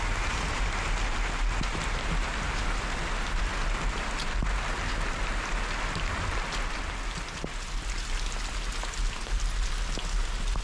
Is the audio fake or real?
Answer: real